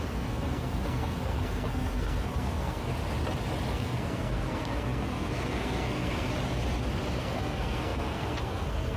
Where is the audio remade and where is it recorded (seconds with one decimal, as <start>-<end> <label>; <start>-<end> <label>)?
0.0-2.9 remade; 2.9-3.7 recorded; 3.7-6.3 remade; 6.3-7.2 recorded; 7.2-9.0 remade